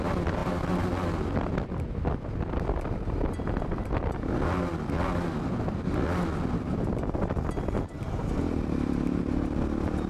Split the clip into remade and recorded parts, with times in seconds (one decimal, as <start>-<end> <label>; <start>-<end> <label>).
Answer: 0.0-10.1 recorded